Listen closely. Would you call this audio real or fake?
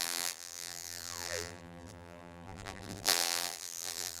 fake